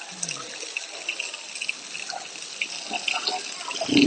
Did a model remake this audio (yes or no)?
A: no